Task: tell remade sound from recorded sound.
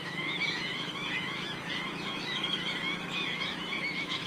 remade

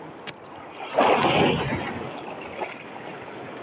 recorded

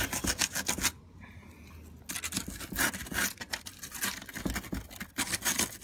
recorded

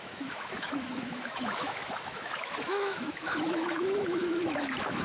remade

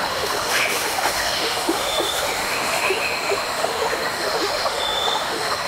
remade